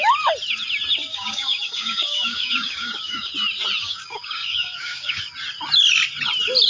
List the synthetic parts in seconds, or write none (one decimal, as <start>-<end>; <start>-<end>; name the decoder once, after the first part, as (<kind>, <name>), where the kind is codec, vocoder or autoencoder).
1.1-3.3 (codec, DAC); 3.8-5.2